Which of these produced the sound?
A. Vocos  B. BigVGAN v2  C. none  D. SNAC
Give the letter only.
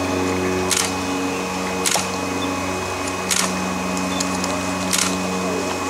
C